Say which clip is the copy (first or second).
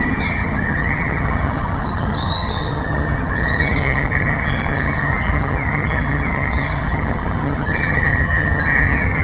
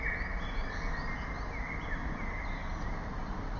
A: first